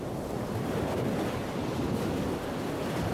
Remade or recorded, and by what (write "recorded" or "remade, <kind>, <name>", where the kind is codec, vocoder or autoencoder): recorded